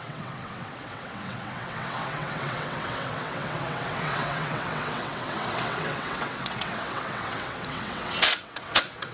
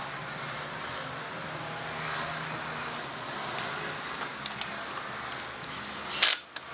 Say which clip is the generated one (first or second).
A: first